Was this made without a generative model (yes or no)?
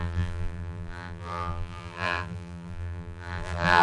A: no